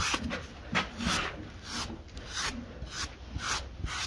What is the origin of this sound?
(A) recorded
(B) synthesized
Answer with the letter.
A